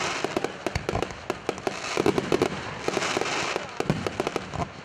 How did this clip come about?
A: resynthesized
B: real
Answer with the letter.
B